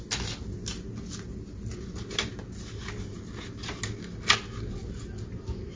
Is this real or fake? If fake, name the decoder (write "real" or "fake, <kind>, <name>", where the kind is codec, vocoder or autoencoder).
real